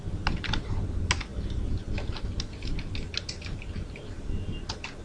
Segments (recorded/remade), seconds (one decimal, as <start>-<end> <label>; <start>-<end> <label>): 0.0-5.0 recorded